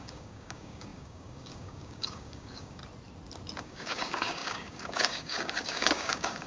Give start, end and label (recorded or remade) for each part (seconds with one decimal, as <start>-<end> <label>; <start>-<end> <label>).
0.0-2.8 remade; 2.8-3.6 recorded; 3.6-6.5 remade